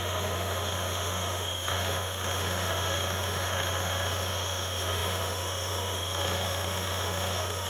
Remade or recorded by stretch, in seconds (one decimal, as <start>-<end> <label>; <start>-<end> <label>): 0.0-7.7 remade